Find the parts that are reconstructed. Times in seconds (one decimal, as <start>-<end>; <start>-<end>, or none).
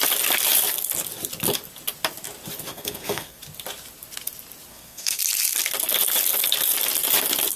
2.7-3.4; 4.7-5.2